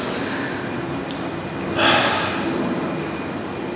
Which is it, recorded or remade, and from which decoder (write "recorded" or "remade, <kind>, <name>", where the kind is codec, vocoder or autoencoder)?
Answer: recorded